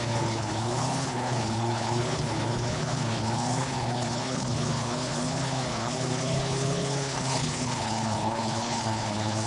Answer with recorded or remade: remade